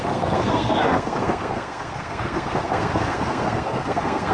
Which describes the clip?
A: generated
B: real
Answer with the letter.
A